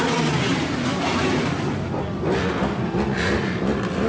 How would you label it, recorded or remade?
recorded